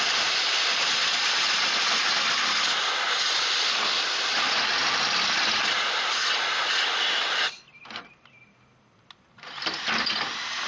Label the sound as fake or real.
real